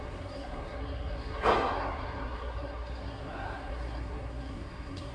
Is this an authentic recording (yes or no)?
no